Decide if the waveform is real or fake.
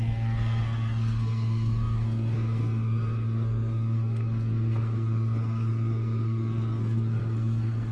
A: fake